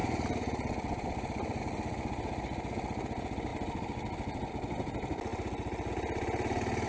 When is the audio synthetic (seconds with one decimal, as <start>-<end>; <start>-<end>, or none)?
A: 0.0-1.6; 3.5-4.5; 5.3-5.9